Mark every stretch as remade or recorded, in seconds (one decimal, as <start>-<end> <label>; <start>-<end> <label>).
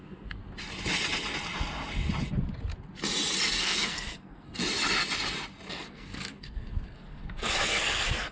0.0-0.4 remade; 0.4-3.6 recorded; 3.6-4.6 remade; 4.6-5.7 recorded; 5.7-8.3 remade